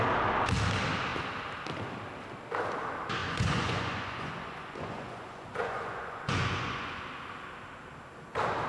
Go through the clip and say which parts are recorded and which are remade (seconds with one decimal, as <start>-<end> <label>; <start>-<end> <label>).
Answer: 0.0-3.2 recorded; 3.2-7.0 remade; 7.0-8.7 recorded